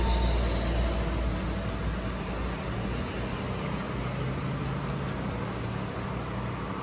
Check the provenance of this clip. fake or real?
real